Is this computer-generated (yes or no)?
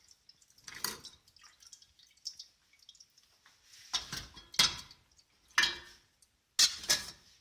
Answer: no